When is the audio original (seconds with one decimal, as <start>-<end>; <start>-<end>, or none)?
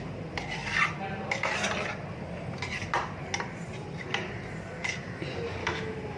0.0-5.6